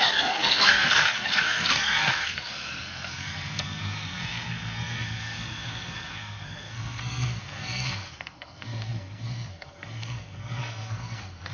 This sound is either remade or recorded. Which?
remade